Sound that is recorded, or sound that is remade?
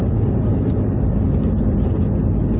recorded